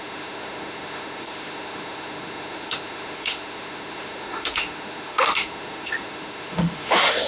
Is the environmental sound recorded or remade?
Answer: remade